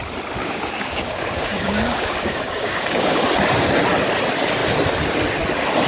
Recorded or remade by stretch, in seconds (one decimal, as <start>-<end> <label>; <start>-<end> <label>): 0.0-0.4 recorded; 0.4-3.2 remade; 3.2-5.9 recorded